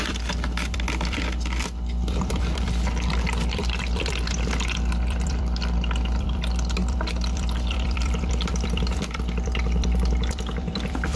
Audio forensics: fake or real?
fake